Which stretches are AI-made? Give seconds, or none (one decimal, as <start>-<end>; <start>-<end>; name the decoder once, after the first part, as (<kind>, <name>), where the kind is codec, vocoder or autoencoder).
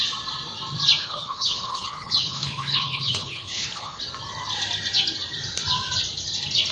1.0-4.0 (codec, HILCodec)